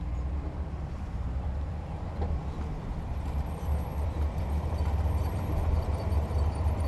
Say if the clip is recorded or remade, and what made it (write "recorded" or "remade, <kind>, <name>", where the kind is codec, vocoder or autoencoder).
remade, vocoder, BigVGAN v2